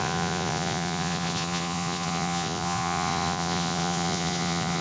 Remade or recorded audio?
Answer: remade